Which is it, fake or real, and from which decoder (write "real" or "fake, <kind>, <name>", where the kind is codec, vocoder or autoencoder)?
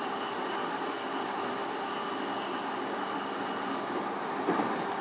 real